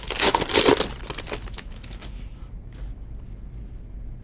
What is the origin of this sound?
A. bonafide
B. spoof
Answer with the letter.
A